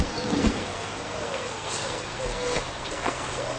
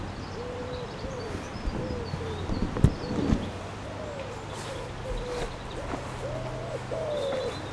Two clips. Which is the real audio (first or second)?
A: second